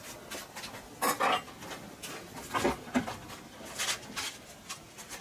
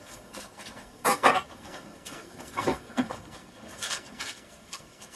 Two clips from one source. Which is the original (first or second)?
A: first